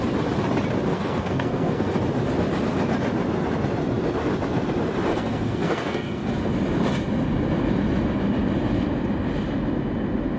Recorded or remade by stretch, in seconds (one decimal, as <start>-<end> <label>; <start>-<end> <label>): 0.0-0.9 recorded; 0.9-2.0 remade; 2.0-5.1 recorded; 5.1-6.3 remade; 6.3-10.4 recorded

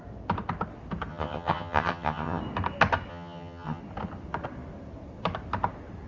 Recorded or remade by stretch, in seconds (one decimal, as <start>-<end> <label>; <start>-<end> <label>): 0.0-1.1 recorded; 1.1-2.4 remade; 2.4-3.1 recorded; 3.1-3.8 remade; 3.8-6.1 recorded

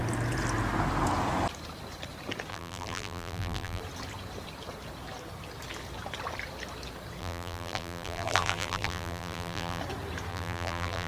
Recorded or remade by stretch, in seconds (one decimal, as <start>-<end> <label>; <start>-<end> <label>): 0.0-2.5 recorded; 2.5-3.8 remade; 3.8-7.2 recorded; 7.2-9.8 remade; 9.8-10.3 recorded; 10.3-11.1 remade

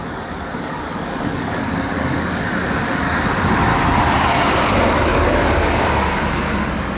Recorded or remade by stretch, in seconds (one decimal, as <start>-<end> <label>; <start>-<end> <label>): 0.0-3.7 remade; 3.7-4.5 recorded; 4.5-7.0 remade

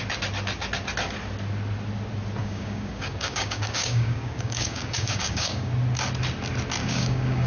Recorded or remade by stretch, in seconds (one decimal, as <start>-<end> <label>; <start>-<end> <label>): 0.0-2.4 recorded; 2.4-5.7 remade; 5.7-6.8 recorded; 6.8-7.5 remade

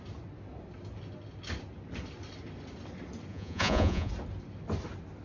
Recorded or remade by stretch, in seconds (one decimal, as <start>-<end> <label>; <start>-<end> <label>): 0.0-3.3 recorded; 3.3-4.1 remade; 4.1-5.2 recorded